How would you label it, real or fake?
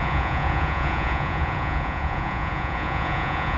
fake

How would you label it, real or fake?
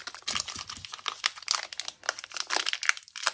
real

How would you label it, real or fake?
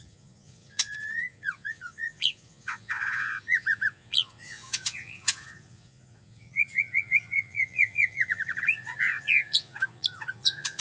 fake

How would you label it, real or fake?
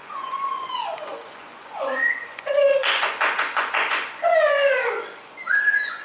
fake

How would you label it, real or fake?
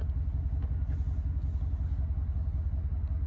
real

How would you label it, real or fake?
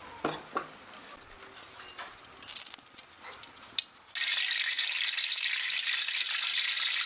real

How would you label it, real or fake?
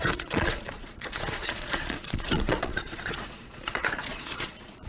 fake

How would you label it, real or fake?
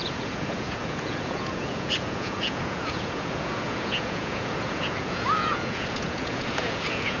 fake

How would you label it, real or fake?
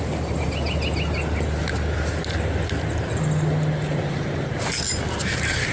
real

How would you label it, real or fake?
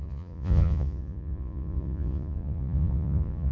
fake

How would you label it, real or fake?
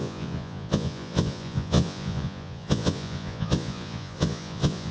fake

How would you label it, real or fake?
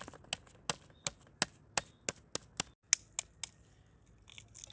real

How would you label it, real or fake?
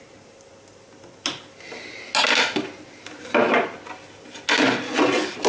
real